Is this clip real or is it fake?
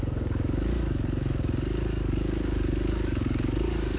fake